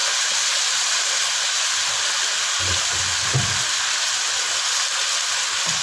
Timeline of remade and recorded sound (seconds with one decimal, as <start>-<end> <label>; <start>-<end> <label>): 0.0-3.5 remade; 3.5-5.8 recorded